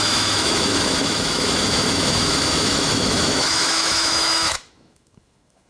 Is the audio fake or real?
fake